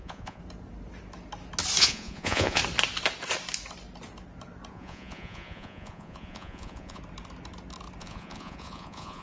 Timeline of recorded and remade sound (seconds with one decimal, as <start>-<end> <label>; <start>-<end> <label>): 0.0-0.4 remade; 0.4-1.8 recorded; 1.8-2.6 remade; 2.6-4.7 recorded; 4.7-7.0 remade; 7.0-8.0 recorded; 8.0-9.2 remade